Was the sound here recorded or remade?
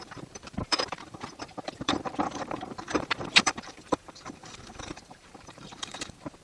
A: remade